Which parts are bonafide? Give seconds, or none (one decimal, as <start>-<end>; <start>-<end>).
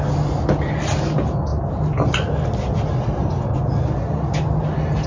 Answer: 0.0-5.1